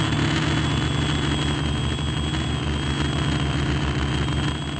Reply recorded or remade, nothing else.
recorded